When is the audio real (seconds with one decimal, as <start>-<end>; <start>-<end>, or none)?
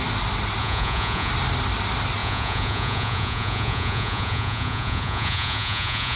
0.0-0.6; 1.3-2.2